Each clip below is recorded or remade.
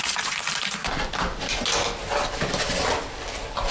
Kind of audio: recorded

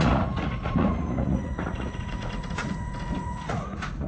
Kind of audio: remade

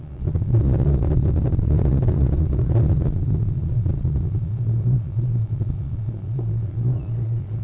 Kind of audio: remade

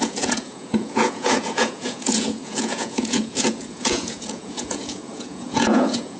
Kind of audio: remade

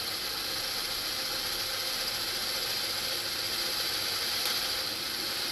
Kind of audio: recorded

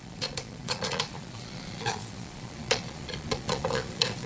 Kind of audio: remade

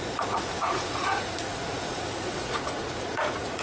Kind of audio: remade